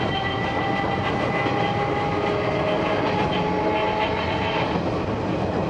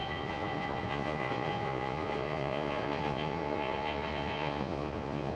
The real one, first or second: first